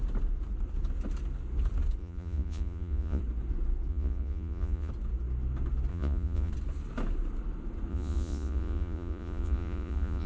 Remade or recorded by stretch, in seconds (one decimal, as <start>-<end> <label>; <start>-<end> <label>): 0.0-2.0 recorded; 2.0-3.2 remade; 3.2-3.9 recorded; 3.9-4.9 remade; 4.9-5.9 recorded; 5.9-6.5 remade; 6.5-7.9 recorded; 7.9-10.3 remade